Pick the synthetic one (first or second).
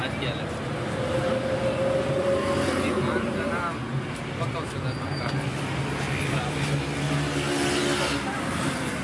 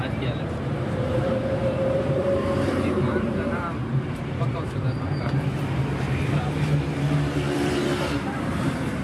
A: second